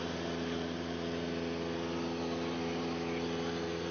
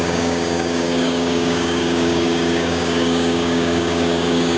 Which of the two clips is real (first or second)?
first